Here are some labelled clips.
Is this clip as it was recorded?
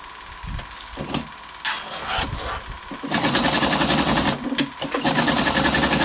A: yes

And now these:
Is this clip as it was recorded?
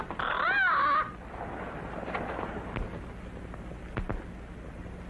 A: yes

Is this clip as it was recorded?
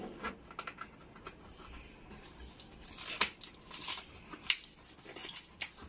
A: yes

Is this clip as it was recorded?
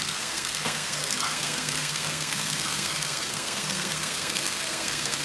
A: no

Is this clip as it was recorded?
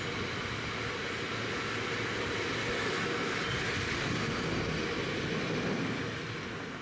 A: yes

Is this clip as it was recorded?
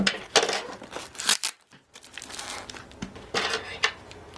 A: yes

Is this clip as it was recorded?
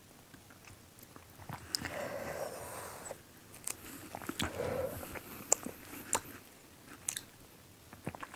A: yes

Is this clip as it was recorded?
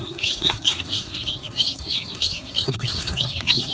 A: no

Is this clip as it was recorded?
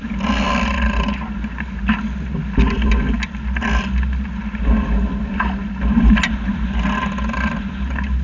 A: yes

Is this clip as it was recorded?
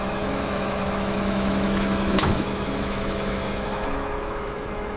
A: no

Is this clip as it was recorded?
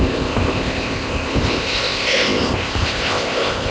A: no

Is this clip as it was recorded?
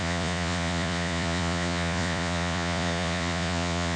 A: no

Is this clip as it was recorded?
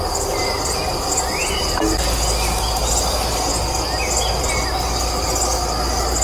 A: yes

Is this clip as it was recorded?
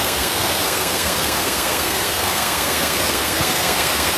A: no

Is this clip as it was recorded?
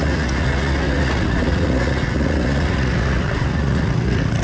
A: no